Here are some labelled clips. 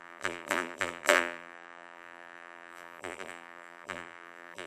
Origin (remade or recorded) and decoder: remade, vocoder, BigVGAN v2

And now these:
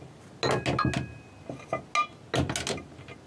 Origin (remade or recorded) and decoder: recorded